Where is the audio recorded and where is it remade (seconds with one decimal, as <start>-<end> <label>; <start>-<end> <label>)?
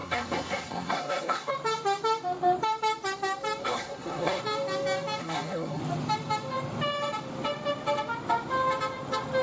0.0-1.5 remade; 1.5-3.6 recorded; 3.6-4.4 remade; 4.4-5.2 recorded; 5.2-5.8 remade; 5.8-9.4 recorded